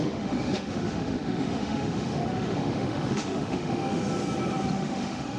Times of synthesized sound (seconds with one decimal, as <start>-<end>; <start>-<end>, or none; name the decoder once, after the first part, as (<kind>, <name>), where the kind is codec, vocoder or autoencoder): 0.0-4.0 (autoencoder, DAC-VAE); 4.7-5.4